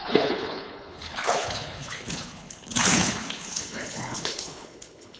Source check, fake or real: fake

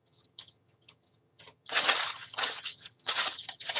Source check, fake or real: fake